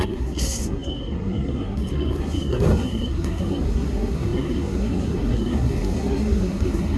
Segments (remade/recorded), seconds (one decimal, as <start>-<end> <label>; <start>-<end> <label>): 0.0-7.0 remade

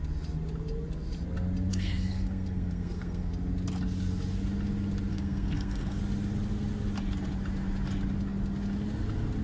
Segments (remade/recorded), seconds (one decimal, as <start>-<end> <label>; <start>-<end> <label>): 0.0-1.7 recorded; 1.7-3.3 remade; 3.3-5.1 recorded; 5.1-6.0 remade; 6.0-9.4 recorded

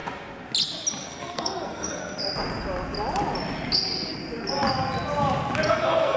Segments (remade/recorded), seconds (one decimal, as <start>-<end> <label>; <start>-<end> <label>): 0.0-1.0 recorded; 1.0-2.0 remade; 2.0-5.7 recorded; 5.7-6.2 remade

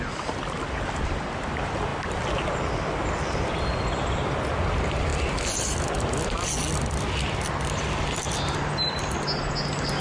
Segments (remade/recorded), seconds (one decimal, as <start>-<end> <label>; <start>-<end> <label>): 0.0-10.0 recorded

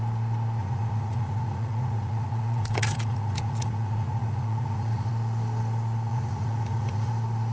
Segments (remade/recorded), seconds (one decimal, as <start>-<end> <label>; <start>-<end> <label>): 0.0-0.6 recorded; 0.6-5.1 remade; 5.1-6.1 recorded; 6.1-7.1 remade; 7.1-7.5 recorded

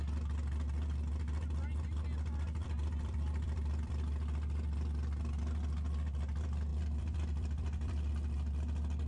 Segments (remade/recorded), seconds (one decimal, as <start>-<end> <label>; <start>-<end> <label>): 0.0-2.6 recorded; 2.6-3.9 remade; 3.9-6.7 recorded; 6.7-8.1 remade; 8.1-9.1 recorded